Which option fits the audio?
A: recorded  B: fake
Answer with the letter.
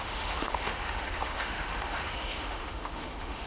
B